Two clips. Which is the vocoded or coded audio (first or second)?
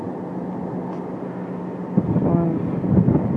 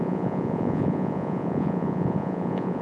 second